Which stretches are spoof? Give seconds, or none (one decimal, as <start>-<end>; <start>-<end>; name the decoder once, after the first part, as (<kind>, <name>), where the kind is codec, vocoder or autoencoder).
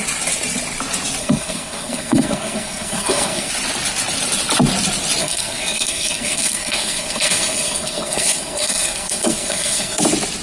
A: 1.2-3.5 (codec, SNAC); 5.2-10.0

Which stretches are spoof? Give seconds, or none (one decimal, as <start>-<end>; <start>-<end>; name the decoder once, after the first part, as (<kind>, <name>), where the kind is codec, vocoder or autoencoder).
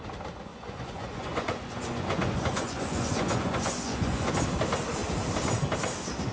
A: 0.5-4.3 (vocoder, Vocos)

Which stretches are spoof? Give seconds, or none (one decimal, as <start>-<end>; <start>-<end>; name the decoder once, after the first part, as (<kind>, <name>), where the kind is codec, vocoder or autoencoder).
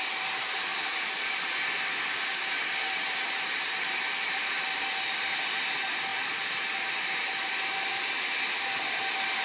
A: 0.7-1.6 (vocoder, BigVGAN v2)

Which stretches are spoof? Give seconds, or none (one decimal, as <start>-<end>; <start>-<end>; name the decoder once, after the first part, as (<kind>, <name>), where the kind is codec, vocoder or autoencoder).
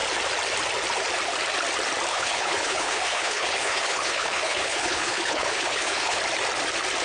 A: 2.1-6.2 (codec, HILCodec)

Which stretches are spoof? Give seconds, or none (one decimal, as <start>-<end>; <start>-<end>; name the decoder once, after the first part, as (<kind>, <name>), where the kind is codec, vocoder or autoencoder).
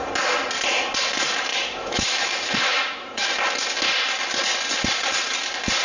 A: 1.5-3.3 (autoencoder, DAC-VAE)